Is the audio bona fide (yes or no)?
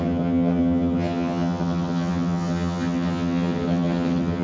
no